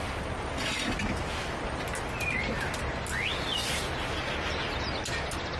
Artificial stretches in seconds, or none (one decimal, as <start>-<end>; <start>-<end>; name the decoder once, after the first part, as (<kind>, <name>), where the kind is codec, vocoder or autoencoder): none

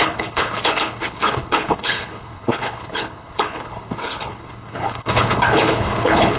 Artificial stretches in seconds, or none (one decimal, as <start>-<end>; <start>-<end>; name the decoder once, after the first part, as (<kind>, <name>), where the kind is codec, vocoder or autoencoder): 0.0-6.4 (codec, HILCodec)

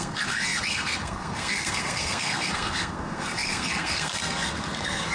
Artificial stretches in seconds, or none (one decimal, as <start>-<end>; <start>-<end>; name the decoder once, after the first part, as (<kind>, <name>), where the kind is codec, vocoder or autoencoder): 0.0-5.1 (codec, SNAC)

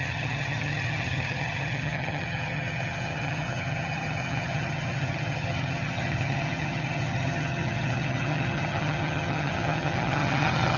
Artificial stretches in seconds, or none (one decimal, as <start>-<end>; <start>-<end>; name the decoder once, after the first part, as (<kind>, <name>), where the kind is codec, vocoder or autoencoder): 0.0-10.8 (vocoder, HiFi-GAN)